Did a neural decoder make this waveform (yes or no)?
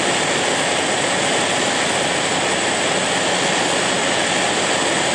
no